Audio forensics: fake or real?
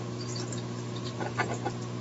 real